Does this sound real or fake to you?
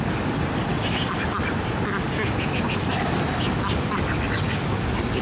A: real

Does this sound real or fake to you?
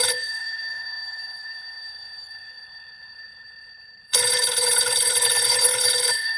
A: fake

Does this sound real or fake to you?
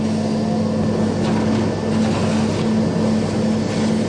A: real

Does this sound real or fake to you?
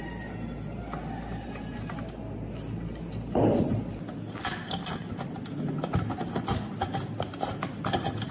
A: real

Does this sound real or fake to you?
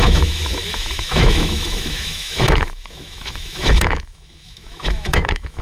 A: fake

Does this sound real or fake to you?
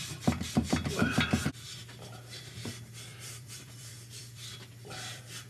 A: fake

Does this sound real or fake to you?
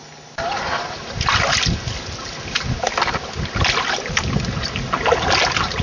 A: real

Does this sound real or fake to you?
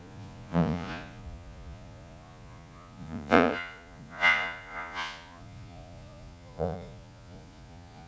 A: fake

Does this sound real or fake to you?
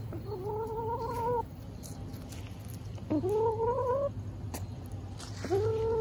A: real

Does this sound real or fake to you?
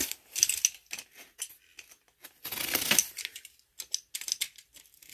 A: real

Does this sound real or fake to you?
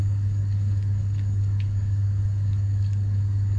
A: fake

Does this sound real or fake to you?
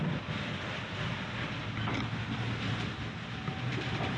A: real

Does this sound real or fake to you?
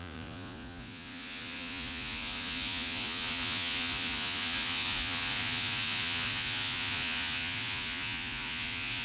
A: fake